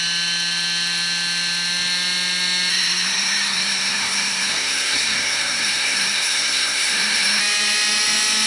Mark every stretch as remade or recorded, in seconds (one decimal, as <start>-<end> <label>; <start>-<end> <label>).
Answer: 0.0-2.7 recorded; 2.7-7.4 remade; 7.4-8.5 recorded